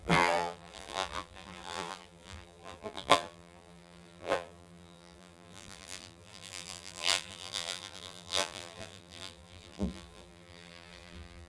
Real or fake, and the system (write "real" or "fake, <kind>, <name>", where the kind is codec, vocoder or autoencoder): fake, vocoder, BigVGAN v2